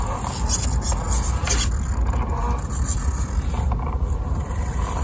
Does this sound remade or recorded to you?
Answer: recorded